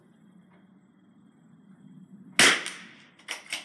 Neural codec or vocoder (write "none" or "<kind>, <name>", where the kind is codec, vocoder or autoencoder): none